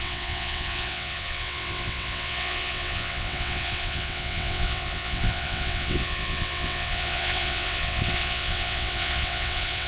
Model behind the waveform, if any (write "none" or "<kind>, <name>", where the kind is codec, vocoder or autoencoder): vocoder, WaveNeXt